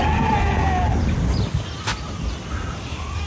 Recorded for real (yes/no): yes